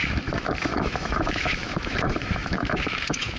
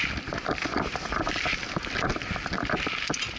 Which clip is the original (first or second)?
second